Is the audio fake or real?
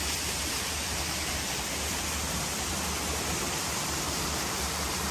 fake